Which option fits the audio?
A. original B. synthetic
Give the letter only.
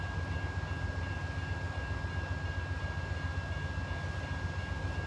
A